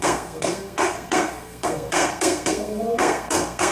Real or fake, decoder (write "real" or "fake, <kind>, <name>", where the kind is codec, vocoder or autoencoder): fake, codec, SNAC